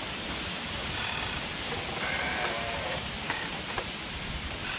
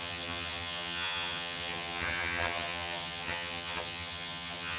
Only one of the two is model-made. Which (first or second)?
second